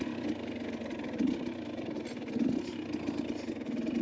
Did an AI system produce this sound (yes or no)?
no